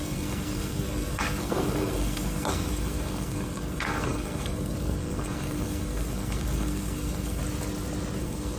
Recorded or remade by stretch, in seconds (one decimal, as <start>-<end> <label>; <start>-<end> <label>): 0.0-7.4 remade; 7.4-8.2 recorded; 8.2-8.6 remade